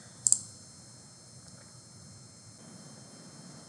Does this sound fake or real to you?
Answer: real